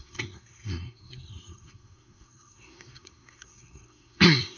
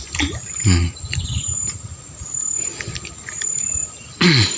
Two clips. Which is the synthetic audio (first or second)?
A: first